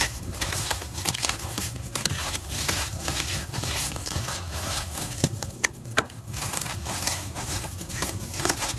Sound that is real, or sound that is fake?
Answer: fake